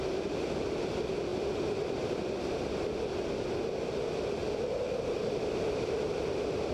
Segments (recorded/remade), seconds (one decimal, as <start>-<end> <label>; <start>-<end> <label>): 0.0-1.3 recorded; 1.3-3.0 remade; 3.0-4.4 recorded; 4.4-6.0 remade; 6.0-6.7 recorded

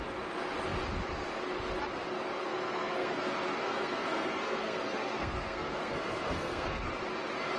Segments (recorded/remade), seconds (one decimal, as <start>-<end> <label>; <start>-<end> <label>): 0.0-2.4 recorded; 2.4-6.9 remade; 6.9-7.6 recorded